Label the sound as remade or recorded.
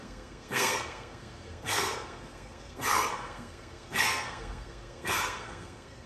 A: remade